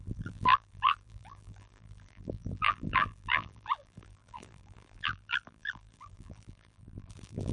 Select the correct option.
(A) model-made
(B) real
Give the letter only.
A